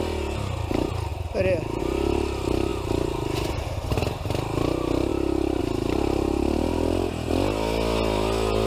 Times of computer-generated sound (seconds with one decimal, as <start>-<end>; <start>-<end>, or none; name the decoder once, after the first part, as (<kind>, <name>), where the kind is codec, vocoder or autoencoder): none